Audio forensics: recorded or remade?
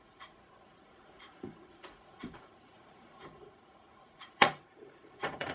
remade